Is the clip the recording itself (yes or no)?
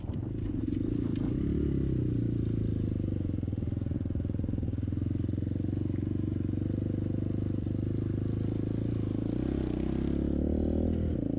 yes